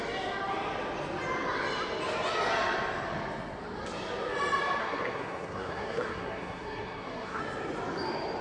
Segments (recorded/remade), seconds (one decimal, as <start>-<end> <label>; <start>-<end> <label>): 0.0-4.8 recorded; 4.8-7.4 remade; 7.4-8.4 recorded